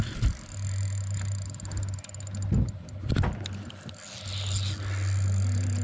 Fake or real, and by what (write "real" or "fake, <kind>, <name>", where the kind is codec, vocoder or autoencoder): real